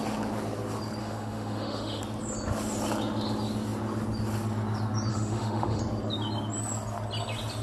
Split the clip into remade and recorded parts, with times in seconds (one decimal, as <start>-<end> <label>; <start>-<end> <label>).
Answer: 0.0-1.0 recorded; 1.0-2.0 remade; 2.0-5.1 recorded; 5.1-5.8 remade; 5.8-7.6 recorded